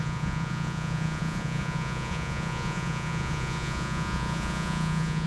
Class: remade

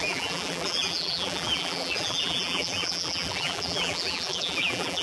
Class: remade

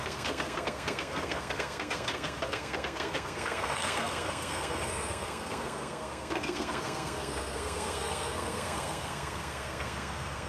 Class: remade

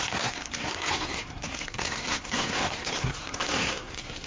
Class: remade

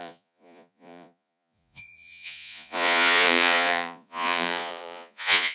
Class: remade